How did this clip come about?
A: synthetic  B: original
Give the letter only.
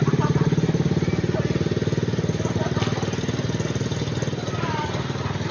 B